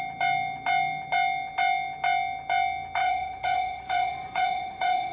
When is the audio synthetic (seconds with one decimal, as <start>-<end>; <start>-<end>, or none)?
3.0-5.1